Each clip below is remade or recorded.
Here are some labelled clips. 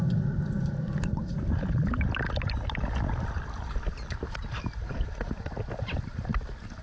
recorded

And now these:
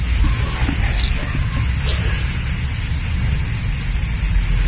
recorded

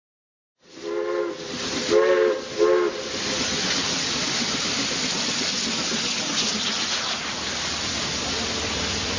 recorded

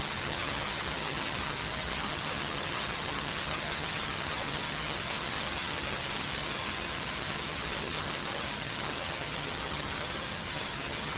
remade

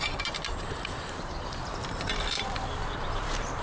remade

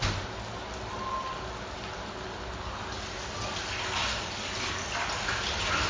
recorded